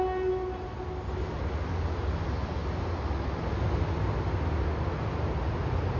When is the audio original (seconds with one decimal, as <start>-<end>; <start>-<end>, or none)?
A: 0.0-6.0